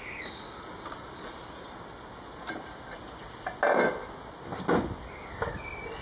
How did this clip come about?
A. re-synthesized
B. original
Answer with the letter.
B